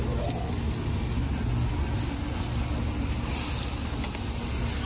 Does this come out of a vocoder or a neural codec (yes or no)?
no